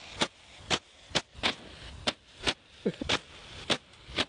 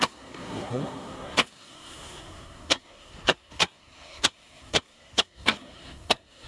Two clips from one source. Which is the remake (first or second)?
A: second